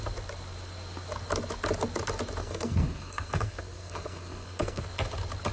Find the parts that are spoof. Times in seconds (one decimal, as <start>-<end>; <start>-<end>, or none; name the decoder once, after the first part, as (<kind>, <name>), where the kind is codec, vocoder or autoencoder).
2.4-4.8 (codec, SNAC)